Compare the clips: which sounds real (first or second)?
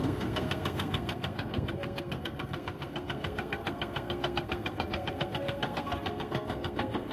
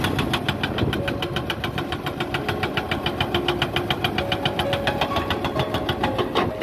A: second